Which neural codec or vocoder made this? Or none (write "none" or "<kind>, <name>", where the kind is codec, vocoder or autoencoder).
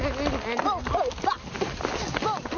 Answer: none